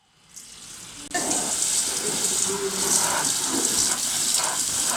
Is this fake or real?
real